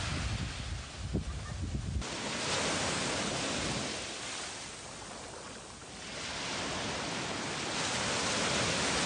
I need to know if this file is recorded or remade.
recorded